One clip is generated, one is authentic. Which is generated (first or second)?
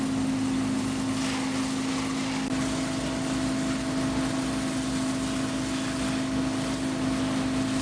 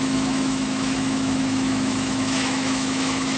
second